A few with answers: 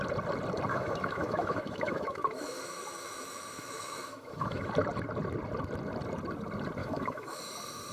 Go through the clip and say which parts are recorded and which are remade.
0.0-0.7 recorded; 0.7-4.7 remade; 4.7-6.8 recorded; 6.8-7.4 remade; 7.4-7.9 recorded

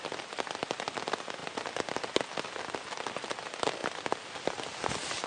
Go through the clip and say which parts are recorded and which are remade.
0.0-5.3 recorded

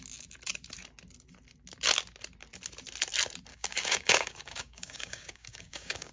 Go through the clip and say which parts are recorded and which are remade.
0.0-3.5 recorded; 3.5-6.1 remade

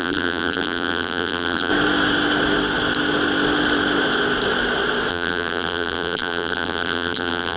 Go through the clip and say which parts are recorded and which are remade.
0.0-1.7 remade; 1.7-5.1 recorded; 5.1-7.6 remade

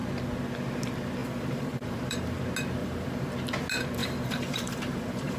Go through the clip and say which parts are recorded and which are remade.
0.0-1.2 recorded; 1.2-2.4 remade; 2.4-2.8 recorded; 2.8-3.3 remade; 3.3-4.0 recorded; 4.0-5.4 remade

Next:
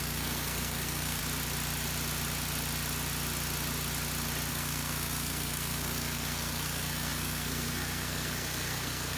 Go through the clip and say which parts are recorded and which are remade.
0.0-1.2 remade; 1.2-4.5 recorded; 4.5-9.2 remade